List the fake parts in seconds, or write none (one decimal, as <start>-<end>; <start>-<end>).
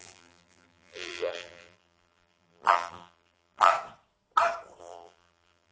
0.0-3.7; 4.8-5.7